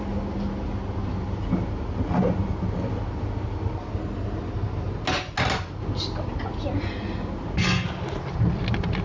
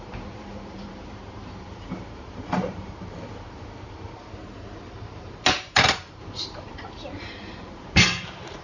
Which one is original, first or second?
first